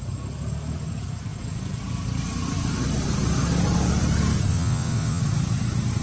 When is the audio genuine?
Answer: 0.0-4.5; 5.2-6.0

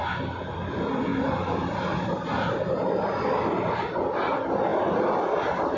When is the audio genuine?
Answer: 0.0-5.8

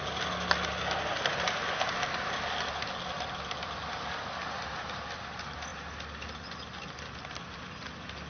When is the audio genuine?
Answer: 0.0-8.3

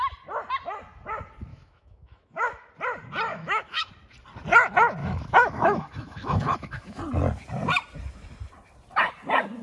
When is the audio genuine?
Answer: 0.0-1.5; 2.7-3.3; 3.9-5.0; 7.0-9.6

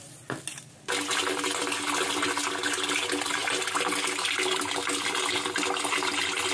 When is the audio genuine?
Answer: 0.0-6.5

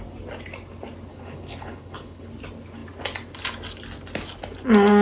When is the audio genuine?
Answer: 0.0-1.1; 2.3-5.0